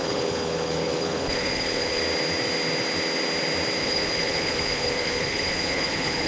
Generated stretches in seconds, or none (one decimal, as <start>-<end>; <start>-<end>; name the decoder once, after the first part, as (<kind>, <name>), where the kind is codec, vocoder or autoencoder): 0.0-2.0 (codec, HILCodec); 3.8-6.3